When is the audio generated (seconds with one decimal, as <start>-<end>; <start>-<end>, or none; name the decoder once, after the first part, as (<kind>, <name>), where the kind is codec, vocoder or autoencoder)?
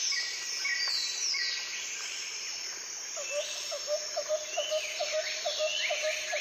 none